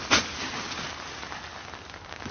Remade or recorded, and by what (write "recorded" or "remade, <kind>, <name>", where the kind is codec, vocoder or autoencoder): recorded